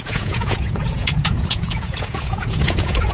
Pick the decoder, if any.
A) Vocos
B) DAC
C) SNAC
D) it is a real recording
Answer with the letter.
A